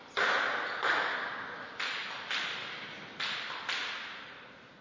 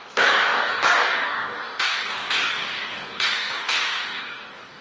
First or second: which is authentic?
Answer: first